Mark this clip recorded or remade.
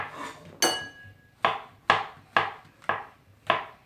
recorded